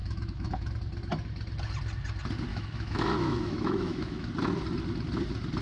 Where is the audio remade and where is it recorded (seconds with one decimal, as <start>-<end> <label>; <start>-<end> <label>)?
0.0-0.7 remade; 0.7-2.5 recorded; 2.5-4.3 remade; 4.3-5.6 recorded